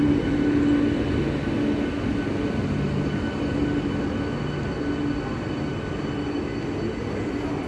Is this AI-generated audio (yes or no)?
no